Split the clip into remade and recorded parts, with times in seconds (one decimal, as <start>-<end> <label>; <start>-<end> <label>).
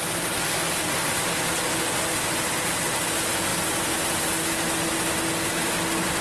0.0-6.2 recorded